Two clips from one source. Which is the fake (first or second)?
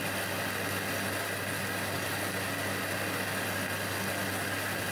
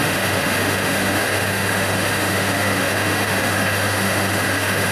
second